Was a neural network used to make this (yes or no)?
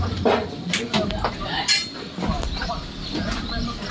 no